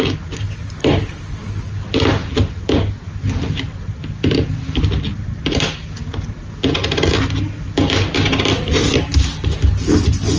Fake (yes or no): no